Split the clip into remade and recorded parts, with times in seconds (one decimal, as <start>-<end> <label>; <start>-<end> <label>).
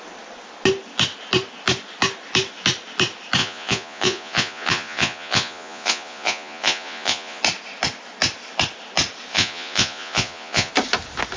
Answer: 0.0-3.4 recorded; 3.4-7.4 remade; 7.4-9.3 recorded; 9.3-10.7 remade; 10.7-11.4 recorded